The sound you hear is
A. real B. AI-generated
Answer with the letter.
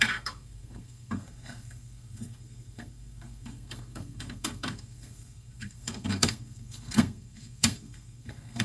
B